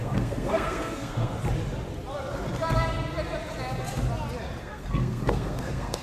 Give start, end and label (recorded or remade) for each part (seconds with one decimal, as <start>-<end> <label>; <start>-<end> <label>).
0.0-1.3 remade; 1.3-4.6 recorded; 4.6-6.0 remade